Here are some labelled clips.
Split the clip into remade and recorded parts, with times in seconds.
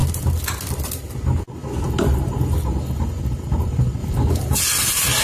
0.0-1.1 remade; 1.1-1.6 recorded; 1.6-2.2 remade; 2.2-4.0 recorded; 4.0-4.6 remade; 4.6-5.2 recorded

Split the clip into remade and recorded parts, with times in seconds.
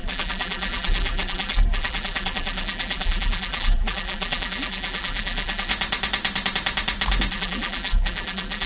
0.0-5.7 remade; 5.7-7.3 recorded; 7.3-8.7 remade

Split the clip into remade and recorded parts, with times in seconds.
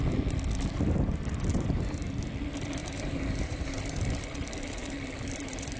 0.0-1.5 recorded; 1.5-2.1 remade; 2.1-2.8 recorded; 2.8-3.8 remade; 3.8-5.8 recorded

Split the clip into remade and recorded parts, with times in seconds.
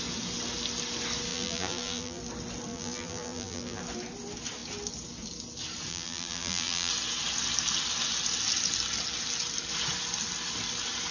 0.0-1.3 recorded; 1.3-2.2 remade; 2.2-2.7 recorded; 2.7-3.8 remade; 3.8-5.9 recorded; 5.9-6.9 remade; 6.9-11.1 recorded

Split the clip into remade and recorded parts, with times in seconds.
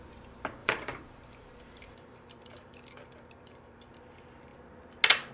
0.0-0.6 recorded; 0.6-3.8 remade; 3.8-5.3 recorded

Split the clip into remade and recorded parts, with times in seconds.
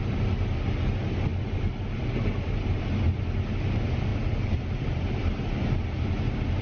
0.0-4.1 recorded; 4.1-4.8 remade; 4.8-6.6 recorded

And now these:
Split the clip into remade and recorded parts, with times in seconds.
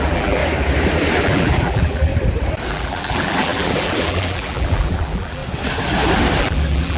0.0-0.4 remade; 0.4-1.2 recorded; 1.2-2.1 remade; 2.1-2.7 recorded; 2.7-5.4 remade; 5.4-6.4 recorded; 6.4-7.0 remade